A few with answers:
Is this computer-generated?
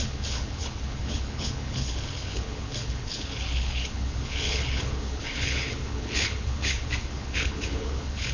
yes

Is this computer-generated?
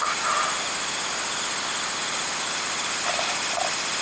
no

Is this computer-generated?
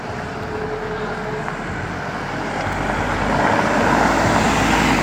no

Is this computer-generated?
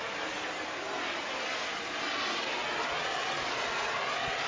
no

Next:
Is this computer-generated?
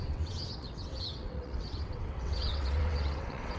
yes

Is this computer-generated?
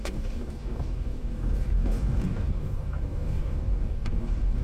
yes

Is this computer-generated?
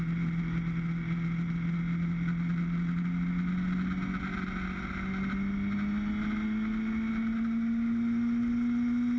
no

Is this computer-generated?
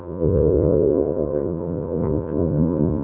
yes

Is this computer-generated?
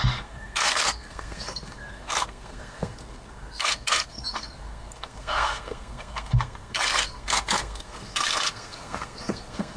yes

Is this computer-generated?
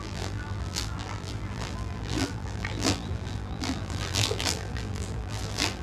yes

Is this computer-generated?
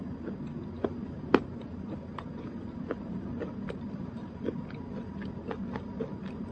no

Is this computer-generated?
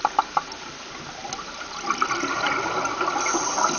no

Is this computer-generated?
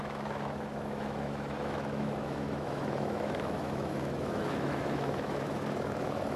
yes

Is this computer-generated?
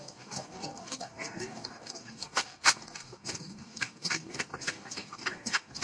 yes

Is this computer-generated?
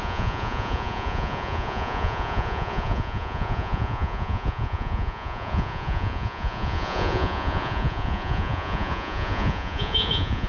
yes